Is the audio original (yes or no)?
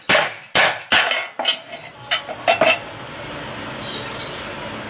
yes